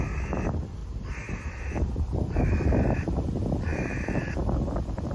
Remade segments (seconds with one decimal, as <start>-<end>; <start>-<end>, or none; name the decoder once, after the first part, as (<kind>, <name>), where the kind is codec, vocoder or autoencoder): 0.8-2.3 (vocoder, BigVGAN v2); 3.7-4.3